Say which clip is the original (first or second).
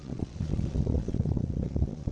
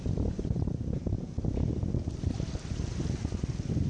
second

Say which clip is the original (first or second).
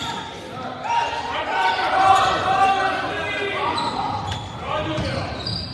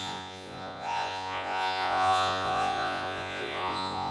first